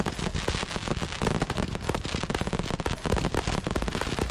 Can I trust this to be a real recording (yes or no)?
yes